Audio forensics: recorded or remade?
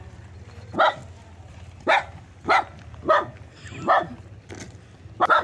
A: recorded